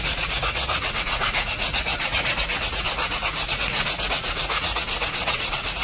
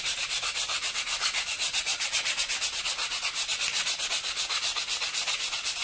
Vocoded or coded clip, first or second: first